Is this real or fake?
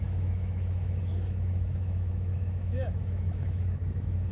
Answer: fake